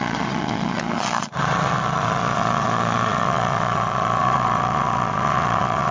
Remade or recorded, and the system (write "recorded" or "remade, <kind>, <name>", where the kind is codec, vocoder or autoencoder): remade, vocoder, Vocos